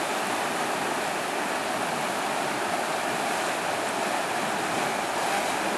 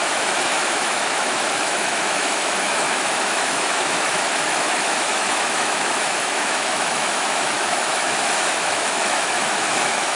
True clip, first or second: first